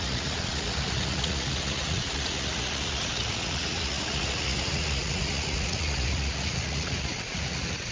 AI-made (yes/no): yes